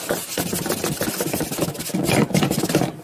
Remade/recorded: recorded